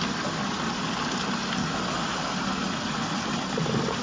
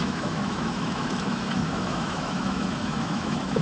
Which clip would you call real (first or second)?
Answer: first